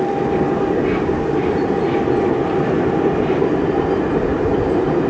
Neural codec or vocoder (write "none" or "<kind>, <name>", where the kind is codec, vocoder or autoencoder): none